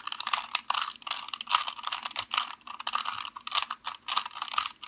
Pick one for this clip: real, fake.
real